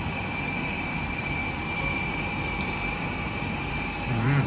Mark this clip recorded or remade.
remade